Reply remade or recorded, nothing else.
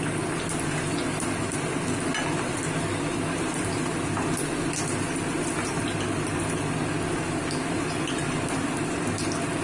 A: recorded